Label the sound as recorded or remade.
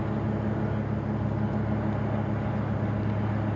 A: recorded